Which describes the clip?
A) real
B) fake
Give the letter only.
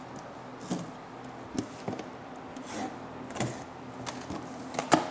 A